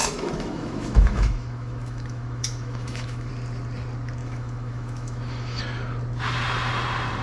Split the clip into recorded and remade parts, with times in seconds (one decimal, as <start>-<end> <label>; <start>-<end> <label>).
0.0-3.3 remade; 3.3-4.2 recorded; 4.2-5.6 remade; 5.6-7.2 recorded